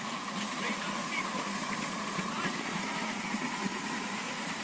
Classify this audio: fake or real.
fake